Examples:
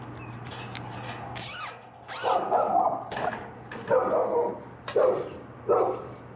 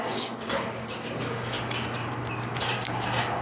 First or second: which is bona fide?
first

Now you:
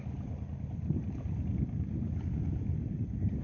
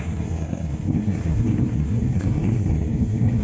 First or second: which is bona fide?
first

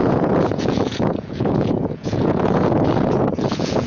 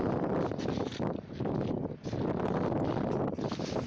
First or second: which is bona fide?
second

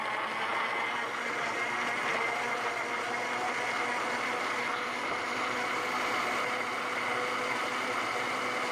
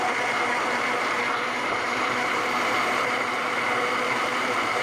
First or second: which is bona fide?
first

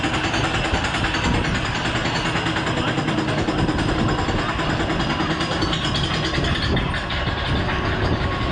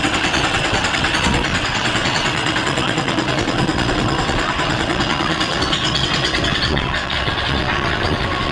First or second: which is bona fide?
first